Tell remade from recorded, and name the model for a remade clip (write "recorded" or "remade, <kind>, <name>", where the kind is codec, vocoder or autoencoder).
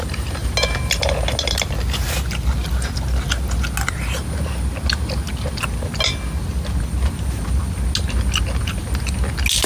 recorded